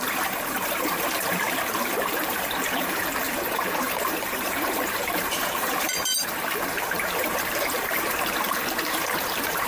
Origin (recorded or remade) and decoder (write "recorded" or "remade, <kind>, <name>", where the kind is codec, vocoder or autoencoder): remade, vocoder, BigVGAN v2